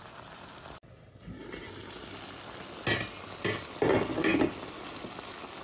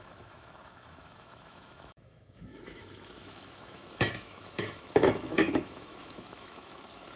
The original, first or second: first